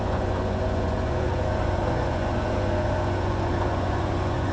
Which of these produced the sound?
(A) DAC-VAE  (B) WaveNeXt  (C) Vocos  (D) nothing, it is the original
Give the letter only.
C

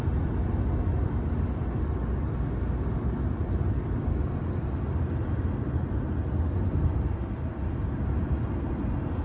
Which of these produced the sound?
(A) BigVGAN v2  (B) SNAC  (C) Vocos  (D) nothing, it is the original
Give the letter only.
D